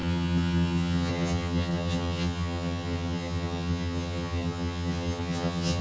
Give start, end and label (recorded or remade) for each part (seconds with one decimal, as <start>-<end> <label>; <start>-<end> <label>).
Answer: 0.0-5.8 remade